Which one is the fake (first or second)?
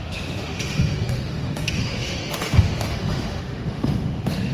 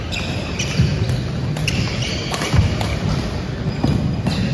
first